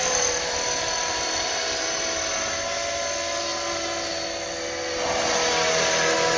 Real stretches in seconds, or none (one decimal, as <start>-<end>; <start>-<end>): 0.0-6.4